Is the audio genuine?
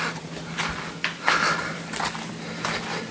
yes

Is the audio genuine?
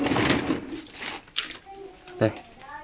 yes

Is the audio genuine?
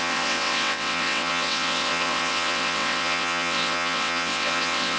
no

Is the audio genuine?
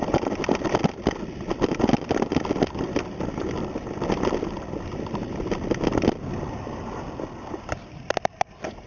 yes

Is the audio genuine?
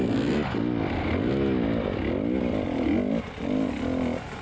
yes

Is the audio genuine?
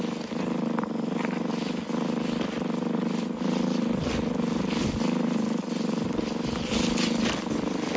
yes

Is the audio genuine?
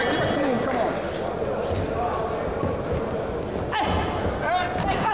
yes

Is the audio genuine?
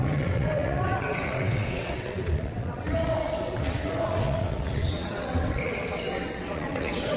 no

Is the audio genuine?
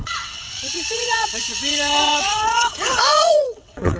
no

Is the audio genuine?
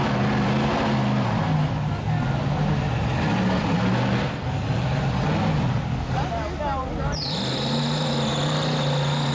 yes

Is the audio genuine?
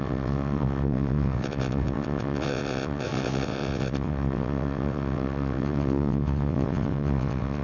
no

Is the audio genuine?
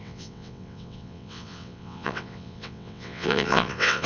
no